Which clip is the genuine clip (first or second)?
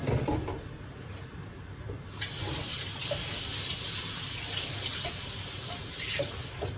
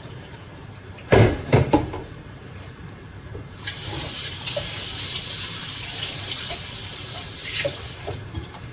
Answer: first